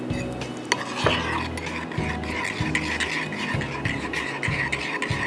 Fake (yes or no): no